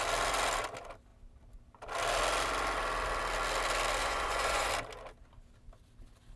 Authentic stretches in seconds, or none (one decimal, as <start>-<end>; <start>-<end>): 0.0-4.0; 4.7-6.4